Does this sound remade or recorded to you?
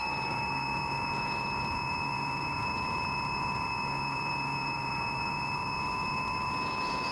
remade